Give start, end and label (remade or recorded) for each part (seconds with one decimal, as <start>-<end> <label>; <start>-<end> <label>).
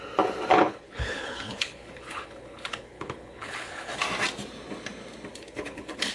0.0-0.5 recorded; 0.5-4.0 remade; 4.0-5.3 recorded; 5.3-6.1 remade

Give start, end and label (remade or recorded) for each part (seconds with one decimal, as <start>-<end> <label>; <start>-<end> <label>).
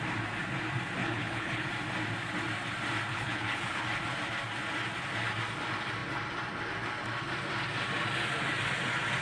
0.0-1.0 recorded; 1.0-1.7 remade; 1.7-3.1 recorded; 3.1-3.8 remade; 3.8-9.2 recorded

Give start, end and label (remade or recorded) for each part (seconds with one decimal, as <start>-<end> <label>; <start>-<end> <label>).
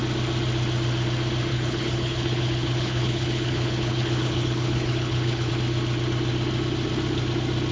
0.0-1.5 recorded; 1.5-5.5 remade; 5.5-7.7 recorded